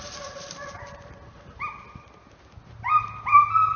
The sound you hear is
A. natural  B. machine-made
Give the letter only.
A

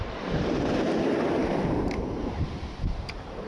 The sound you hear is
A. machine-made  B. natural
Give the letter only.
A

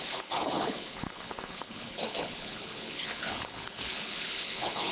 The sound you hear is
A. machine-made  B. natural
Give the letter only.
A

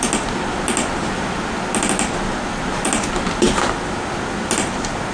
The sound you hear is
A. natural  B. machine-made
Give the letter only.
A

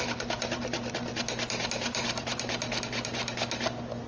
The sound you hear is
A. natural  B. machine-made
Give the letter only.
A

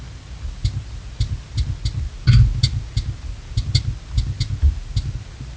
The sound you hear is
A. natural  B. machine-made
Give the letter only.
A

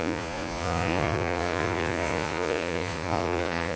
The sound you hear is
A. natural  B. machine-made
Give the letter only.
B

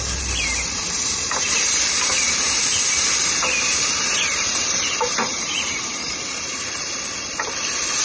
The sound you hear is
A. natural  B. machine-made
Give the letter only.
B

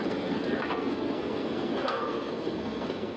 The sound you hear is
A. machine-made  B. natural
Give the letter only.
A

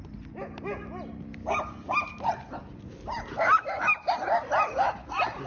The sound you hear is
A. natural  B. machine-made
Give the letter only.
A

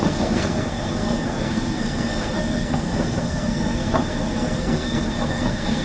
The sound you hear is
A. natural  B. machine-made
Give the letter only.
B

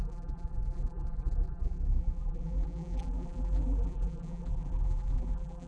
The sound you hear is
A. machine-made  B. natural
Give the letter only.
A